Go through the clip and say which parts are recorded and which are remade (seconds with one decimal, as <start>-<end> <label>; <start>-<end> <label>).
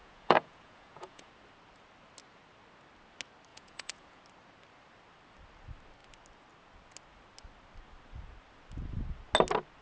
0.0-1.3 remade; 1.3-3.5 recorded; 3.5-4.2 remade; 4.2-9.8 recorded